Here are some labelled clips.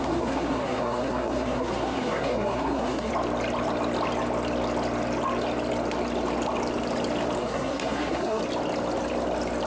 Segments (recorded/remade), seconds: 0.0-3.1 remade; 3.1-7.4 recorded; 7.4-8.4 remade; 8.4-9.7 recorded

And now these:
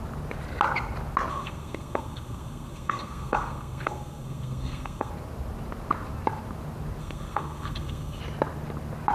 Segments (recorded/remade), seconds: 0.0-1.3 recorded; 1.3-5.1 remade; 5.1-7.0 recorded; 7.0-8.2 remade; 8.2-9.1 recorded

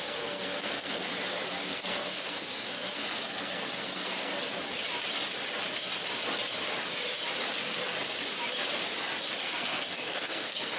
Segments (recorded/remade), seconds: 0.0-1.1 remade; 1.1-1.6 recorded; 1.6-4.3 remade; 4.3-9.4 recorded; 9.4-10.8 remade

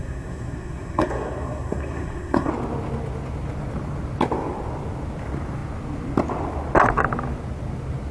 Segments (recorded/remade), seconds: 0.0-2.5 remade; 2.5-8.1 recorded

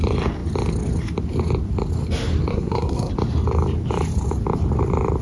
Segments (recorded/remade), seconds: 0.0-2.5 recorded; 2.5-3.1 remade; 3.1-5.2 recorded

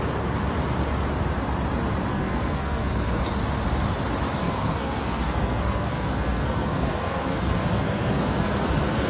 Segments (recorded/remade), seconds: 0.0-2.1 recorded; 2.1-3.2 remade; 3.2-4.4 recorded; 4.4-9.1 remade

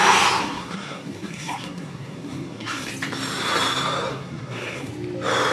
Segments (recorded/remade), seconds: 0.0-0.4 recorded; 0.4-2.9 remade; 2.9-4.1 recorded; 4.1-4.9 remade; 4.9-5.5 recorded